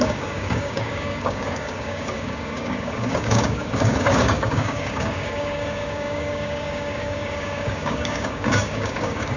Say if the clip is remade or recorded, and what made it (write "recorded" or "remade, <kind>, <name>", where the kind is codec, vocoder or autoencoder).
remade, codec, DAC